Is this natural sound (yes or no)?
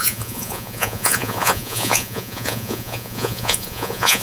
no